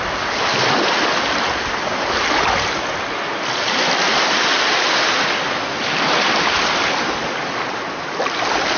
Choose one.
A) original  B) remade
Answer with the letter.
A